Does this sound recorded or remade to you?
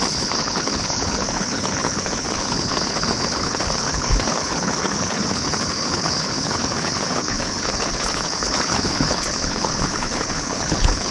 remade